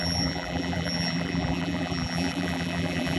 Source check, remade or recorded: remade